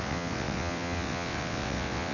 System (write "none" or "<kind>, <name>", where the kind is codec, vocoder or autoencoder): vocoder, WaveNeXt